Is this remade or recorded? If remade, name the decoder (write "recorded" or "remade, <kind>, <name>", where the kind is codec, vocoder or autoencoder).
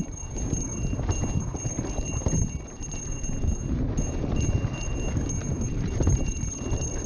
recorded